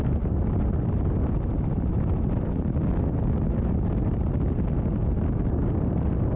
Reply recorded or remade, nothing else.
recorded